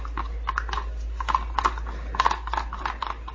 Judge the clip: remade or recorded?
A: recorded